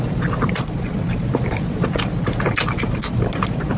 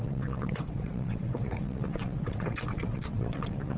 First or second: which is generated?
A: second